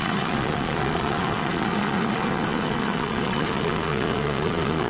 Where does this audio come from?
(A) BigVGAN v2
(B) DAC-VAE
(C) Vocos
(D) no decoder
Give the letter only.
C